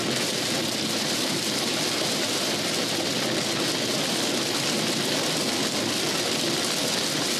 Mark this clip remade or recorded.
recorded